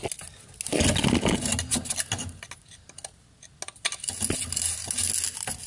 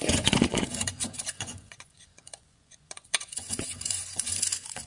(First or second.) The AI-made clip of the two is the second